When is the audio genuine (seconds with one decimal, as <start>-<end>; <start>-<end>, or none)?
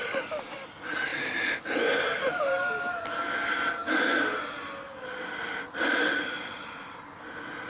0.0-7.7